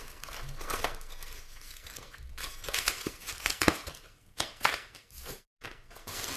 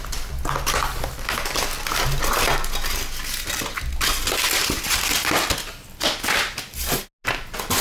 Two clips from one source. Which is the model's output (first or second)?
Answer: first